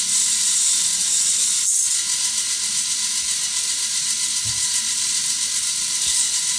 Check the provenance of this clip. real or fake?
real